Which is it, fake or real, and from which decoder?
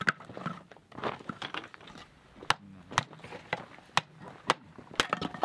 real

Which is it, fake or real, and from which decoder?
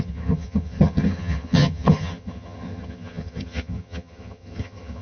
fake, vocoder, HiFi-GAN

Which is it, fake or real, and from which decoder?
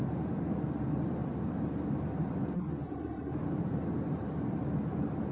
fake, vocoder, BigVGAN v2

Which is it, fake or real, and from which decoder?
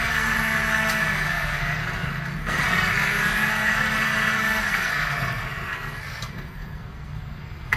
fake, codec, SNAC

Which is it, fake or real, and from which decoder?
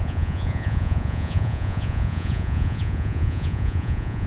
fake, vocoder, Vocos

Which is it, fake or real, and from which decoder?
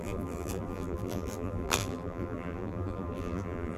fake, vocoder, BigVGAN v2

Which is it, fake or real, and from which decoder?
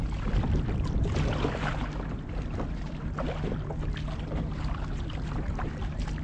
real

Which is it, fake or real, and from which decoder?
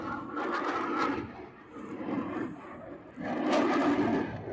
real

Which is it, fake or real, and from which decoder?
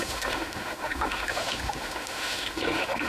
fake, autoencoder, DAC-VAE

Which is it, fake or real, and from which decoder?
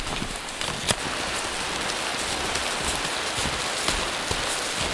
real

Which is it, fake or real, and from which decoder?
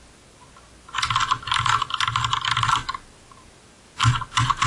real